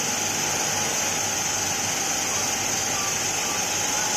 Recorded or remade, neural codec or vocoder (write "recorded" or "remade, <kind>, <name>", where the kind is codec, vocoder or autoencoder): recorded